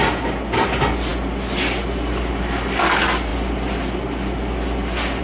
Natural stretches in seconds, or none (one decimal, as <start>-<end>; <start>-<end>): 0.0-5.2